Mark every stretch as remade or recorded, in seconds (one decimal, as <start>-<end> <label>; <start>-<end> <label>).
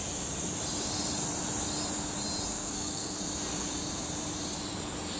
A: 0.0-2.5 recorded; 2.5-3.2 remade; 3.2-5.2 recorded